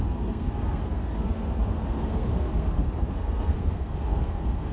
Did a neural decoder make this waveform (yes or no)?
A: yes